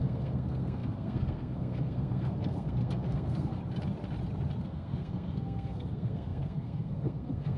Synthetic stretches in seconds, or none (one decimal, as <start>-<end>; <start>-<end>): 0.0-3.6; 4.6-7.6